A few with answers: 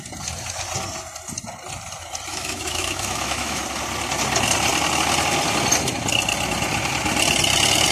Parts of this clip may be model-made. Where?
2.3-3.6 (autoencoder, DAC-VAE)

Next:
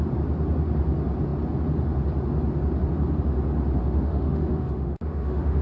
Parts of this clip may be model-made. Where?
3.8-5.6 (autoencoder, DAC-VAE)

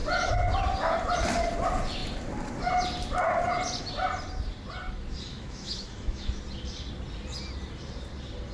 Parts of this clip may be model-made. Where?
5.3-6.4 (autoencoder, DAC-VAE)

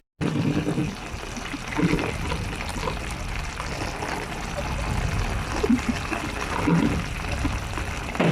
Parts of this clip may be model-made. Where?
none

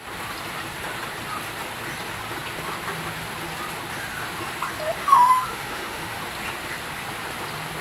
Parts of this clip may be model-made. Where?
5.0-6.2 (autoencoder, DAC-VAE)

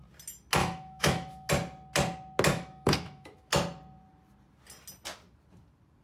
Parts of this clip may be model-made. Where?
0.6-1.5 (autoencoder, DAC-VAE); 2.5-3.5